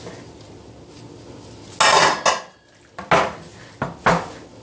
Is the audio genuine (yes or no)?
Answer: yes